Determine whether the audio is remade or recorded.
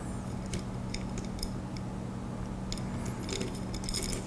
recorded